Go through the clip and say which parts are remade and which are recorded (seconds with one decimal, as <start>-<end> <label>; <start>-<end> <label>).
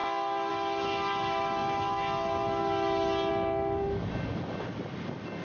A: 0.0-5.4 recorded